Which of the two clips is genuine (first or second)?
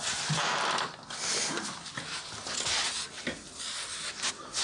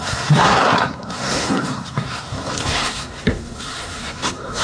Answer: first